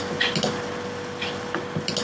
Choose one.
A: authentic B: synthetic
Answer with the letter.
A